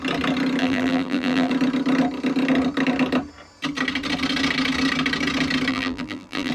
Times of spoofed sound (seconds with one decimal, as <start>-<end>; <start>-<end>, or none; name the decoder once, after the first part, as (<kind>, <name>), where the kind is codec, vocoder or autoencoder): 0.6-1.5 (vocoder, BigVGAN v2); 5.7-6.5